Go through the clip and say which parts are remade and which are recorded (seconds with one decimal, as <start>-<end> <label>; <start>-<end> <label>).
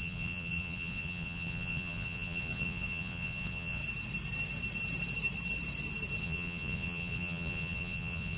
0.0-3.8 remade; 3.8-6.2 recorded; 6.2-8.4 remade